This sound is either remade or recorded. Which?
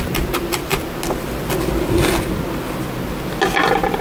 recorded